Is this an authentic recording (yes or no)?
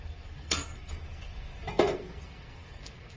no